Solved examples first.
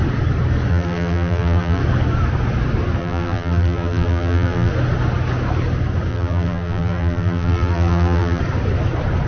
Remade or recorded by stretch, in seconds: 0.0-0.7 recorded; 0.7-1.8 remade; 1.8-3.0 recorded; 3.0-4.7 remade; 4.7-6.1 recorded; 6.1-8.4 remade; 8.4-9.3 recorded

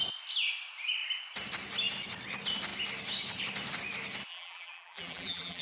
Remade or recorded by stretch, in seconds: 0.0-4.3 recorded; 4.3-5.6 remade

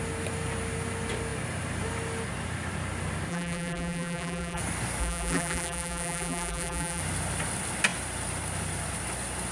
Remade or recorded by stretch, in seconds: 0.0-3.3 recorded; 3.3-4.6 remade; 4.6-5.0 recorded; 5.0-7.0 remade; 7.0-9.5 recorded

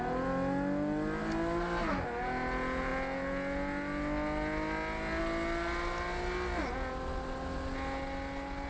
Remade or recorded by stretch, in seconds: 0.0-8.7 recorded

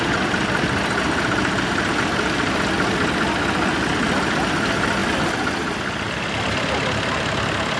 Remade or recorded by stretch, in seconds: 0.0-7.8 recorded

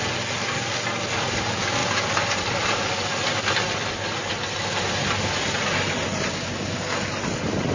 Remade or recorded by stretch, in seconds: 0.0-7.7 recorded

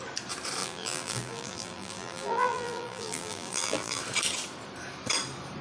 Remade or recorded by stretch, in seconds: 0.0-0.6 recorded; 0.6-4.0 remade; 4.0-5.6 recorded